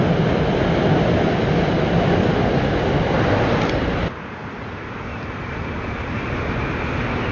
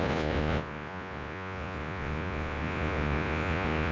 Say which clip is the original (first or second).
first